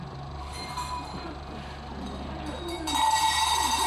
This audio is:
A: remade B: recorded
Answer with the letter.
A